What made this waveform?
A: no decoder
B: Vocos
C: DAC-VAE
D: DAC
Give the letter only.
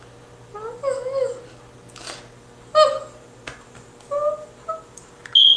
A